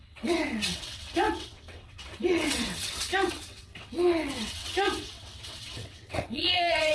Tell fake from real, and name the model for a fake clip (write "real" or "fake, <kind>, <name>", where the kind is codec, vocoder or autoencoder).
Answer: fake, vocoder, WaveNeXt